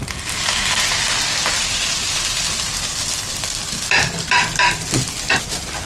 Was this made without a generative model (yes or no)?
yes